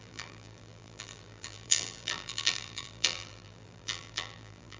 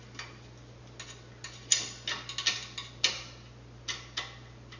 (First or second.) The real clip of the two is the second